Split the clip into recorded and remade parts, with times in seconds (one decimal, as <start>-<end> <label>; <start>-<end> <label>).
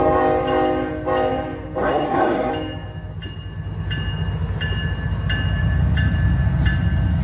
0.0-1.8 recorded; 1.8-2.5 remade; 2.5-7.2 recorded